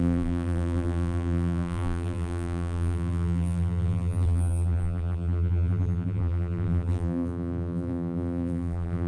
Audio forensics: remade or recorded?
remade